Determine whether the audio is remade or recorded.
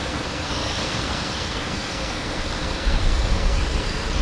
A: remade